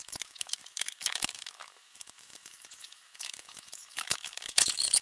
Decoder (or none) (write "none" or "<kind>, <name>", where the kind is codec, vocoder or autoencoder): autoencoder, DAC-VAE